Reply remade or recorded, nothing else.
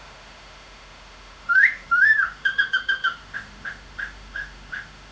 remade